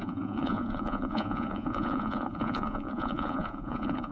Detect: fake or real fake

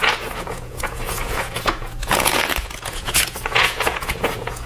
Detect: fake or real fake